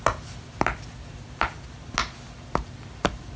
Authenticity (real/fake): real